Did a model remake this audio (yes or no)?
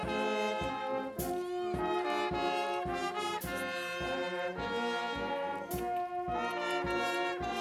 no